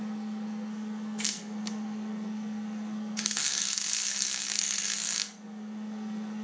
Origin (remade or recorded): remade